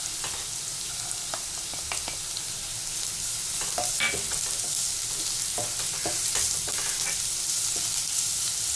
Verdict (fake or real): real